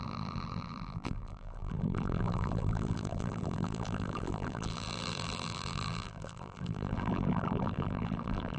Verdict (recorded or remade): remade